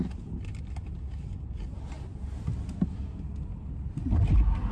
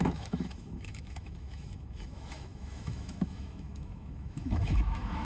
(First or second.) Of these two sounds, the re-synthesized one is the second